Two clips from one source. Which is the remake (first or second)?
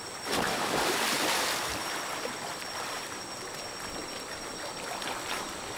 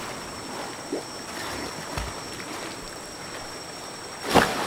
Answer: first